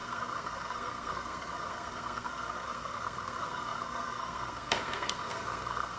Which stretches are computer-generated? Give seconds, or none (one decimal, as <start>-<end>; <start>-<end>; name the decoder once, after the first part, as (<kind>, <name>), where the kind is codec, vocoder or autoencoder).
0.0-6.0 (codec, SNAC)